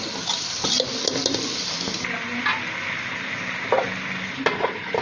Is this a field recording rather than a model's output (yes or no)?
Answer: yes